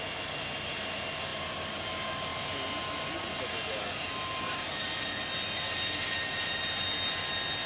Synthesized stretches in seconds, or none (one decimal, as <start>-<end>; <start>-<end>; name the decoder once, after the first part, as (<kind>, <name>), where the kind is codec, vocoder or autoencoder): none

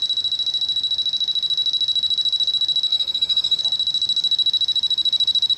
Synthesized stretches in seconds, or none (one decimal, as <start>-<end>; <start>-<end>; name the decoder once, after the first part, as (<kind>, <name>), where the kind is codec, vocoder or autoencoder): 2.9-3.6 (codec, SNAC)

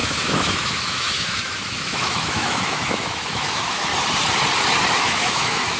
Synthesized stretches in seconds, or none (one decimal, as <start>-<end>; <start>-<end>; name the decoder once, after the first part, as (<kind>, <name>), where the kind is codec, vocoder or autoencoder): 0.0-3.9 (autoencoder, DAC-VAE); 5.0-5.8

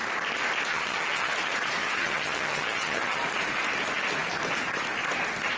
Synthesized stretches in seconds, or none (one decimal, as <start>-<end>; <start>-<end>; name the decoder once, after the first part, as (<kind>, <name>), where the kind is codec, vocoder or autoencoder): 0.7-1.3 (vocoder, HiFi-GAN); 1.8-3.2

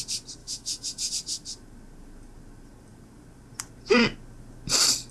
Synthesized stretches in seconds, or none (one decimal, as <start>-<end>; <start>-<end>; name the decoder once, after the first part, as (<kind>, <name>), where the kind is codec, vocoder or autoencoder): 0.4-1.1 (autoencoder, DAC-VAE)

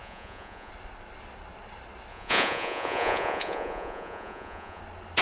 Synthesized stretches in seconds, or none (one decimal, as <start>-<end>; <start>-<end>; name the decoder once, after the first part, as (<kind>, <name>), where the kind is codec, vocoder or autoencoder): 0.0-0.7 (vocoder, Vocos); 2.1-4.8

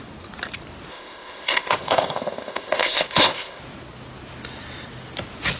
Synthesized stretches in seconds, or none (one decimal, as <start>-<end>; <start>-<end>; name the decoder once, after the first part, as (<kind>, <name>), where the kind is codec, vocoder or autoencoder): 0.9-3.6 (codec, ZipCodec)

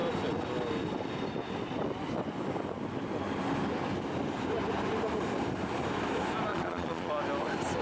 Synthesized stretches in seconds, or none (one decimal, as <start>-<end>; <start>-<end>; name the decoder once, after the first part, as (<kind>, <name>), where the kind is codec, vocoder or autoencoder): 6.5-7.1 (vocoder, Vocos)